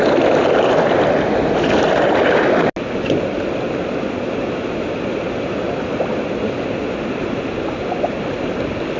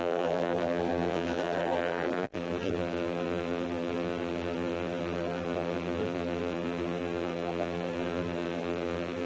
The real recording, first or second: first